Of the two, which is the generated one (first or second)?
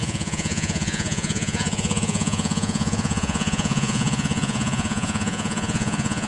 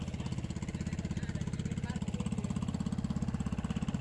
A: first